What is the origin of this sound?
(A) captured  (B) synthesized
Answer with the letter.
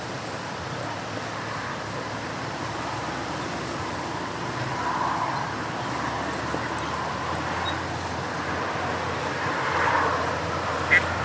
A